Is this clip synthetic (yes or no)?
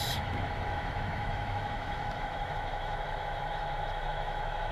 yes